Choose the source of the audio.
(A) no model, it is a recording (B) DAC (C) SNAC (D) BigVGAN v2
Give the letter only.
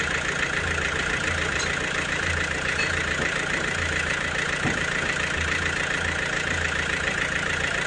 A